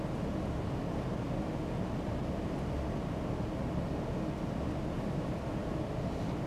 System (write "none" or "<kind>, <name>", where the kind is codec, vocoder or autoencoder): none